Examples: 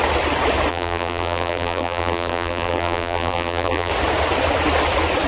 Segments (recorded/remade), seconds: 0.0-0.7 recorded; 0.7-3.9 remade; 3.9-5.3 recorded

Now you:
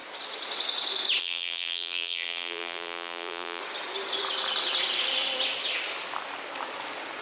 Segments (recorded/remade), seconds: 0.0-1.2 recorded; 1.2-3.6 remade; 3.6-7.2 recorded